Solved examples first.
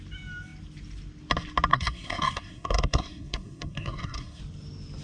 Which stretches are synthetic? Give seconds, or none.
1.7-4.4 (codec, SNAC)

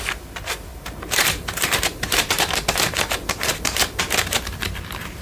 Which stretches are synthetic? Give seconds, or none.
0.7-3.8 (vocoder, BigVGAN v2)

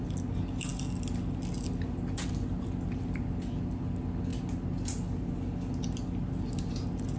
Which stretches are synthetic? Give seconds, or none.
none